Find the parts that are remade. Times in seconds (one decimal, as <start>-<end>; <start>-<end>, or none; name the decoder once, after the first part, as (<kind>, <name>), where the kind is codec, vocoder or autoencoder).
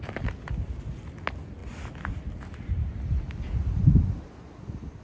none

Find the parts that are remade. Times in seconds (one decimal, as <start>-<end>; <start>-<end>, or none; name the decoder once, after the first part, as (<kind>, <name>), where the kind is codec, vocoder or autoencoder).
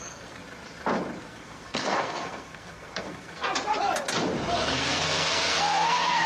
0.0-0.4 (codec, SNAC); 1.2-3.5; 4.5-6.3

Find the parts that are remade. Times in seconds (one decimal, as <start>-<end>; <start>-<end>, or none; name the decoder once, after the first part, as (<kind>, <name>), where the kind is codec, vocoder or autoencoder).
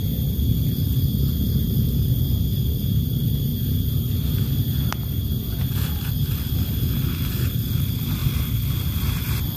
none